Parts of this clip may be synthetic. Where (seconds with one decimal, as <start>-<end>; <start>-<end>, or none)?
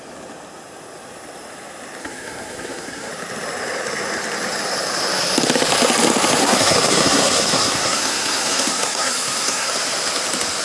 2.0-3.1; 6.4-9.7